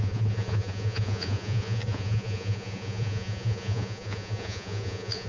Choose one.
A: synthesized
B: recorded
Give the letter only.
A